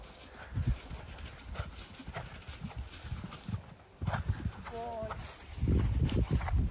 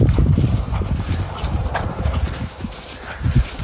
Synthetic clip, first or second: second